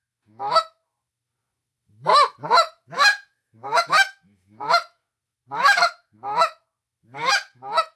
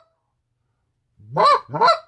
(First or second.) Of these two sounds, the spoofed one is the first